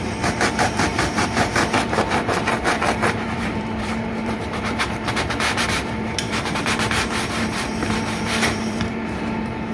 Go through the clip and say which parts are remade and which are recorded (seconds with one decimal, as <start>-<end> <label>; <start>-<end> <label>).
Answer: 0.0-9.7 remade